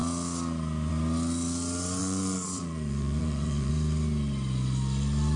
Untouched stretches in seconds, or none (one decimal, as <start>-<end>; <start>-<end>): 0.0-2.0; 3.7-5.4